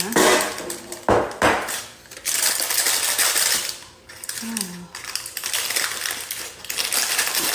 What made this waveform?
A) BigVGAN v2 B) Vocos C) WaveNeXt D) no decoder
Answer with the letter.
D